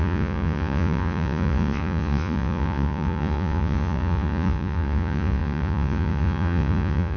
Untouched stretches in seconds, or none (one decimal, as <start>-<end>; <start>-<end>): none